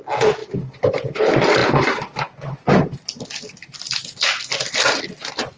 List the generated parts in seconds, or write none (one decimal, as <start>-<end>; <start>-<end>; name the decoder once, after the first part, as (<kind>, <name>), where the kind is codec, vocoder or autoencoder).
none